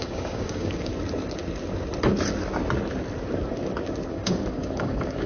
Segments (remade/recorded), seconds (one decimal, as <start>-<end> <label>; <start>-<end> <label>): 0.0-0.9 remade; 0.9-4.1 recorded; 4.1-5.3 remade